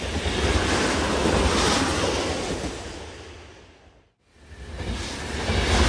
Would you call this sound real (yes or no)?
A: yes